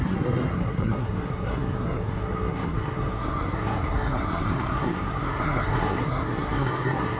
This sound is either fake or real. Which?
fake